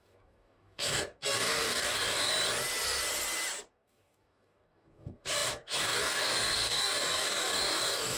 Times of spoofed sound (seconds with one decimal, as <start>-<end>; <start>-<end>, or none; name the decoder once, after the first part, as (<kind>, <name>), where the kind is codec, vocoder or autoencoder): 0.0-2.3 (codec, DAC); 3.7-8.2